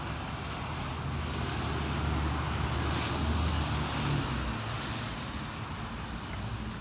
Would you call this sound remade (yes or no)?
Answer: no